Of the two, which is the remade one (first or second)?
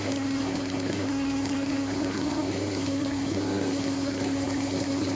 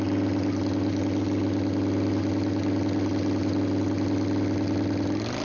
first